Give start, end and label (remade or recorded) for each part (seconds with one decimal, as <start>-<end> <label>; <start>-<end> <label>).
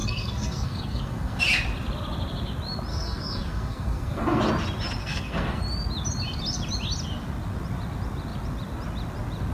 0.0-1.4 remade; 1.4-2.9 recorded; 2.9-4.4 remade; 4.4-5.0 recorded; 5.0-5.6 remade; 5.6-9.5 recorded